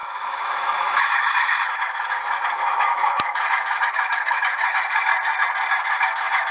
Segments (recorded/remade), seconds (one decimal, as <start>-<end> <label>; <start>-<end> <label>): 0.0-5.1 remade; 5.1-5.7 recorded; 5.7-6.5 remade